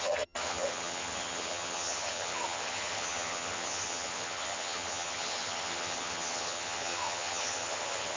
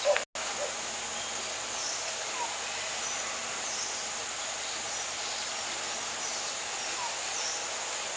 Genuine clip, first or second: second